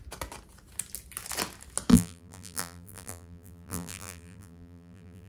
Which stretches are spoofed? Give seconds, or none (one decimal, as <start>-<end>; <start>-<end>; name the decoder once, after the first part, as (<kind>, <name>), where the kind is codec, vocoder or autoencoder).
1.9-5.3 (vocoder, BigVGAN v2)